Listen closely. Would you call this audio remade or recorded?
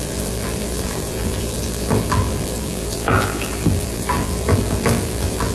remade